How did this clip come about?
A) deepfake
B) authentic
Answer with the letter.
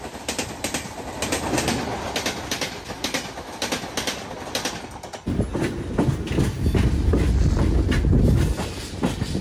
B